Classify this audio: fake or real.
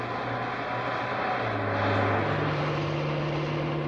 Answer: real